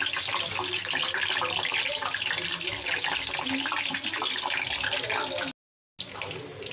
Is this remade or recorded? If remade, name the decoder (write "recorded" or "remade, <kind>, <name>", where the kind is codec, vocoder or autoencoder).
recorded